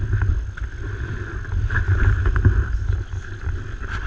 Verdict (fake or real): real